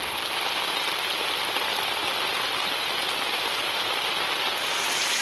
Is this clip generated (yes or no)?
no